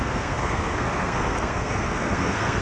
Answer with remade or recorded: remade